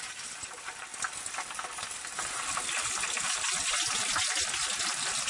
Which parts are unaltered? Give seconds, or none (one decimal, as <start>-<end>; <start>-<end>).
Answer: 0.0-5.3